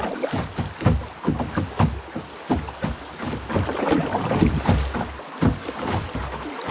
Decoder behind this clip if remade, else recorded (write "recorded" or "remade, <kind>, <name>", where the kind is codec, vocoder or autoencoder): recorded